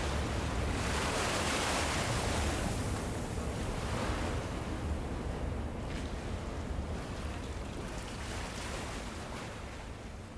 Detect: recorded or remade recorded